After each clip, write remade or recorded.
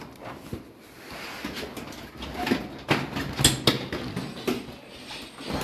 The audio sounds recorded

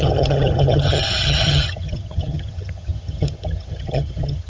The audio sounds remade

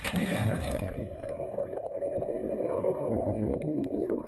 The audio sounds remade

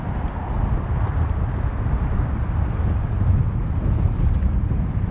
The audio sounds recorded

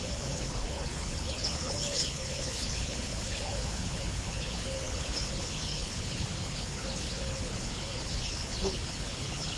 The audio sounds remade